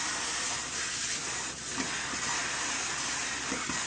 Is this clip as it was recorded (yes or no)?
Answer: yes